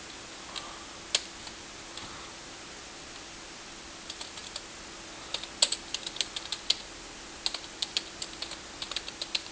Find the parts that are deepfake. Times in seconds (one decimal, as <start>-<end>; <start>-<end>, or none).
none